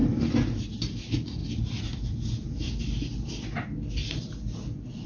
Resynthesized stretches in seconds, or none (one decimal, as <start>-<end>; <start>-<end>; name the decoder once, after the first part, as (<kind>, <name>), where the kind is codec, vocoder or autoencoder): none

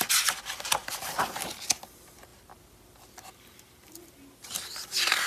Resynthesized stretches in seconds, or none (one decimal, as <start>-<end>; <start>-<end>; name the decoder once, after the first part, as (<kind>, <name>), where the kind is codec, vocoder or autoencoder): 0.8-1.4 (vocoder, BigVGAN v2)

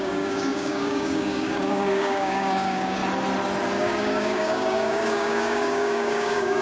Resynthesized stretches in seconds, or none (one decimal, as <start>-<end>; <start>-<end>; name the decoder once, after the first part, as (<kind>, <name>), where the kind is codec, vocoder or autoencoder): 0.0-3.0 (codec, DAC); 3.8-6.6

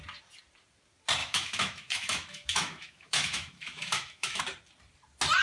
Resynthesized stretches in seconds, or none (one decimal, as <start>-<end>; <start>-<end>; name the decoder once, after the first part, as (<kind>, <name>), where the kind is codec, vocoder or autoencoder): 1.2-4.4 (autoencoder, DAC-VAE)